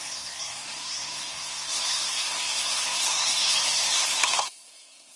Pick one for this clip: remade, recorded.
remade